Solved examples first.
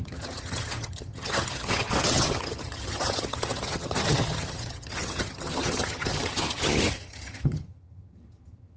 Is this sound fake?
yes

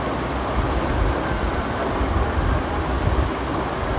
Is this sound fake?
no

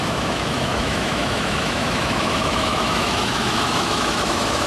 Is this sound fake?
yes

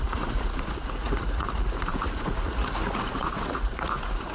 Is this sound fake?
yes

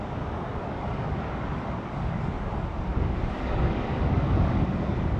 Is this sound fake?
yes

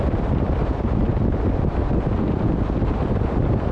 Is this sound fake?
yes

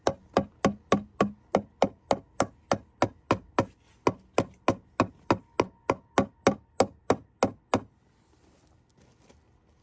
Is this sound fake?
no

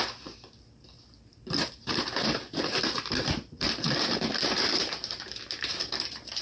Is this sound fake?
yes